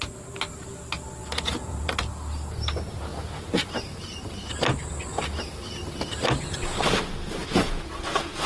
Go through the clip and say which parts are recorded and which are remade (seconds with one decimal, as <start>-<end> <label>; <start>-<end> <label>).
0.0-1.2 recorded; 1.2-1.9 remade; 1.9-7.4 recorded; 7.4-8.5 remade